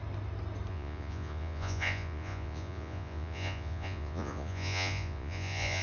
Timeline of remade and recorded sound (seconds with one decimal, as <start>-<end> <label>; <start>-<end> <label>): 0.0-0.7 recorded; 0.7-5.8 remade